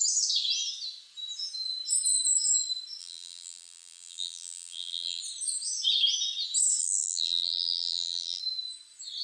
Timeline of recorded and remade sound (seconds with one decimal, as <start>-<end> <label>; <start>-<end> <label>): 0.0-3.0 recorded; 3.0-5.2 remade; 5.2-6.8 recorded; 6.8-8.4 remade; 8.4-9.2 recorded